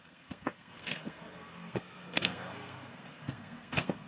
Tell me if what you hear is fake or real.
fake